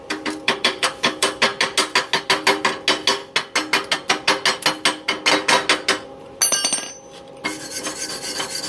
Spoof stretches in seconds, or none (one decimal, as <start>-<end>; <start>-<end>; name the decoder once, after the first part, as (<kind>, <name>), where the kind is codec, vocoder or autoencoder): 0.0-1.5 (vocoder, BigVGAN v2); 6.5-8.7